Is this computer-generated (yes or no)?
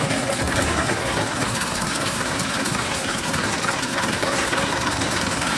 yes